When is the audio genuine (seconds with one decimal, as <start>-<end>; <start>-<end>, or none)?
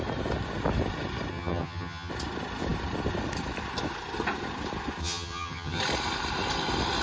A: 0.0-1.3; 2.1-5.0; 5.8-7.0